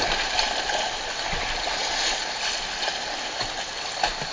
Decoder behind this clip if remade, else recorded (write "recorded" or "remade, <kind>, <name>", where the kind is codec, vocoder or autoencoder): recorded